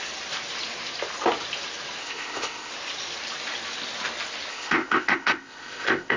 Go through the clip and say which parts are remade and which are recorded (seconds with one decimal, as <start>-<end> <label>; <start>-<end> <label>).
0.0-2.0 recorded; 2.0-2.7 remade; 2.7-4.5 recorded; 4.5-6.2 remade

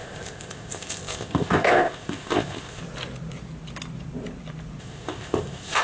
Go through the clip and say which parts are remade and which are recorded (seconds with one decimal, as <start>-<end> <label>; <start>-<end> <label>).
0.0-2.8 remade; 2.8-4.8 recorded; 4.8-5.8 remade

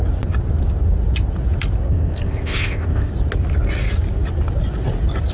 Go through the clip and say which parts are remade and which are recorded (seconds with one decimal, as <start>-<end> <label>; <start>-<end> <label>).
0.0-1.9 recorded; 1.9-3.1 remade; 3.1-5.3 recorded